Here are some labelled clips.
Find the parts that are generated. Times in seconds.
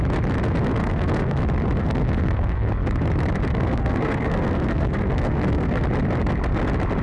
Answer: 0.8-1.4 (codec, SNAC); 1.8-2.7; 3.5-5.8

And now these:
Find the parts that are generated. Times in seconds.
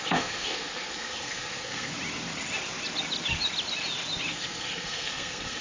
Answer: 0.0-1.9 (codec, SNAC); 4.3-5.6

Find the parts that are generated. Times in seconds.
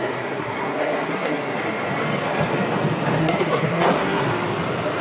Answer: 0.0-1.6 (codec, SNAC); 3.2-4.3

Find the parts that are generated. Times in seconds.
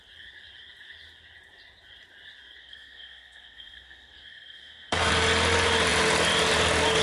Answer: 2.6-5.1 (codec, SNAC)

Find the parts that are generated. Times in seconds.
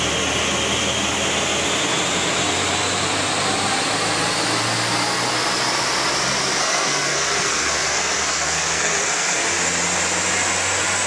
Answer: 6.6-9.4 (codec, SNAC)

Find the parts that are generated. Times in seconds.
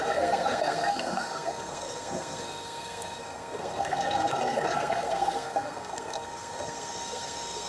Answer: 0.0-7.7 (codec, SNAC)